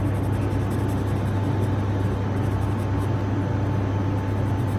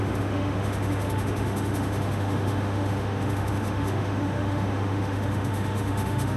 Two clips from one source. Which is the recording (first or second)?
first